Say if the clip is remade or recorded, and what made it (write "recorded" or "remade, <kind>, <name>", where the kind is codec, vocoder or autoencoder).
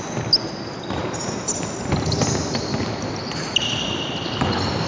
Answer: recorded